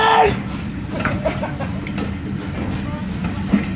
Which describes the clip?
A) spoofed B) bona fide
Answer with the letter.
B